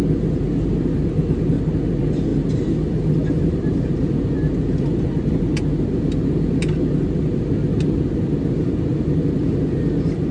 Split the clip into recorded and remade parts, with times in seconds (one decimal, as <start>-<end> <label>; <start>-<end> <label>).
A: 0.0-10.3 recorded